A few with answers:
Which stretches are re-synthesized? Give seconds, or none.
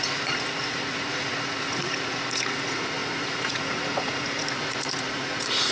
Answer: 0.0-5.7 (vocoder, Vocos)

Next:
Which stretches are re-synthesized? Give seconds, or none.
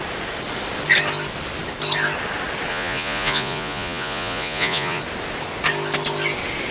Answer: 2.7-5.0 (vocoder, Vocos)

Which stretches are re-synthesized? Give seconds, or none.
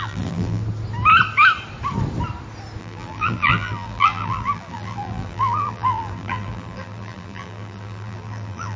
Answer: 0.0-0.6 (vocoder, BigVGAN v2); 2.8-8.8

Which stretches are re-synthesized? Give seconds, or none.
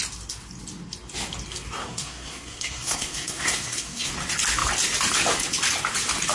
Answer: 1.8-4.1 (codec, SNAC)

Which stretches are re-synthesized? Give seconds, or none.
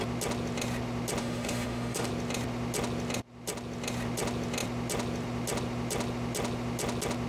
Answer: 1.2-2.1 (autoencoder, DAC-VAE)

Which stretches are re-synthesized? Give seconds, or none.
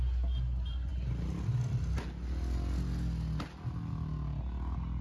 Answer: none